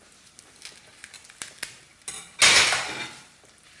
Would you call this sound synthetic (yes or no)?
no